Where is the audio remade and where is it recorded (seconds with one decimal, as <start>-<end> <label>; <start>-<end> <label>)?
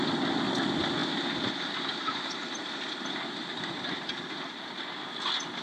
0.0-1.0 recorded; 1.0-4.4 remade; 4.4-5.6 recorded